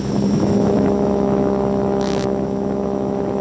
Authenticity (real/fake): fake